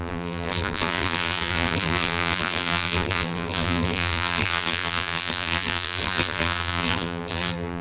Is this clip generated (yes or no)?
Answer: yes